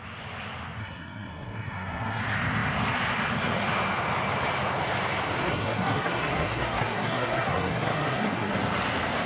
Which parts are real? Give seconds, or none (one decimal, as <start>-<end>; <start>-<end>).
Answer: 0.0-0.8; 2.2-5.4; 8.5-9.3